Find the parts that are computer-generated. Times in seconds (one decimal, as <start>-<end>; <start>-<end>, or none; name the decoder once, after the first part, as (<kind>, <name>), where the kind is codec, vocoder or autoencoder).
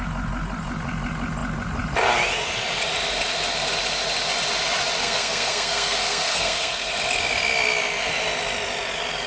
5.0-6.9 (codec, SNAC)